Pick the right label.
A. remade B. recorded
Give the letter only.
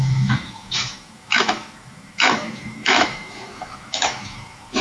A